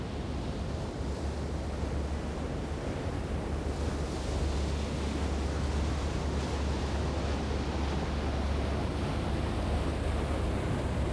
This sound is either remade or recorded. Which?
recorded